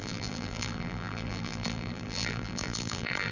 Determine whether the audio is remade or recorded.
remade